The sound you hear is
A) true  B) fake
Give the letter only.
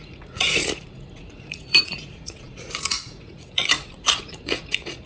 B